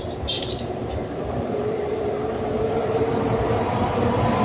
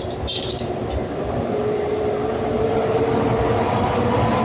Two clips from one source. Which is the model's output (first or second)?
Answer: first